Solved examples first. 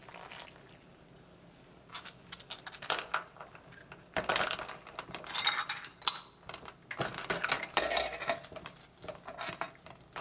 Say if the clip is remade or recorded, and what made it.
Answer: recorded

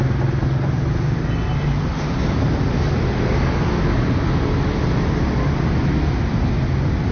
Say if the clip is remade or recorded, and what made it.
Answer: recorded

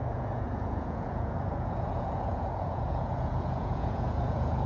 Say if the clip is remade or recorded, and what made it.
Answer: remade, vocoder, Vocos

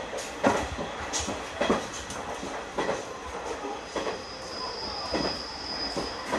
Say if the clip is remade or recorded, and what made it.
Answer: recorded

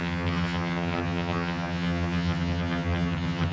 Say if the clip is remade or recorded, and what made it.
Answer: remade, vocoder, HiFi-GAN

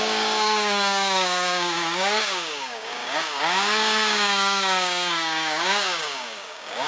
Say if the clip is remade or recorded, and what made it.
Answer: remade, codec, DAC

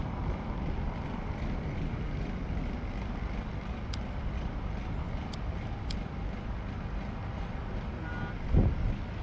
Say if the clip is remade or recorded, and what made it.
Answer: recorded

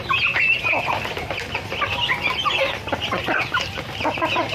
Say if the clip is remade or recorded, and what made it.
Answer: recorded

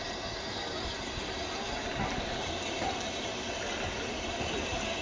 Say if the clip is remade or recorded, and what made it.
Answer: recorded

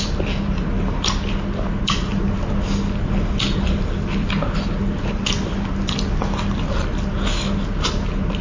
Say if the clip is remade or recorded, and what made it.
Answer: recorded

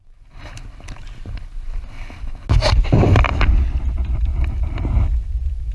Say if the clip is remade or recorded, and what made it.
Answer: recorded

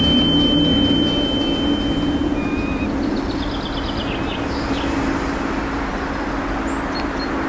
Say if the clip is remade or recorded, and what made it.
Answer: recorded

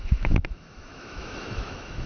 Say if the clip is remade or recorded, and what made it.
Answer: remade, autoencoder, DAC-VAE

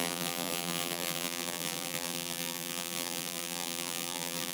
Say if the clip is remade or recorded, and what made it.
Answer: remade, vocoder, BigVGAN v2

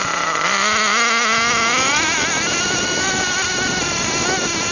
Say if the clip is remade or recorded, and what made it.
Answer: recorded